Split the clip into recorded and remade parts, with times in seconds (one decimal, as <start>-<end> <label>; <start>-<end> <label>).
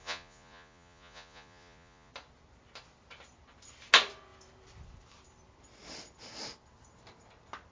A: 0.0-2.1 remade; 2.1-7.7 recorded